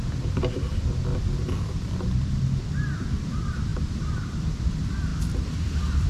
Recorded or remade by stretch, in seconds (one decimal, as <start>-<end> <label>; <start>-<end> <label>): 0.0-5.1 remade; 5.1-6.1 recorded